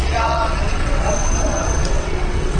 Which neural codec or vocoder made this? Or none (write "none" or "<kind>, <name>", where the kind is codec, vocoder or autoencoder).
vocoder, WaveNeXt